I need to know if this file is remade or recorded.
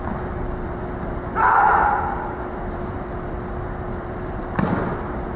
remade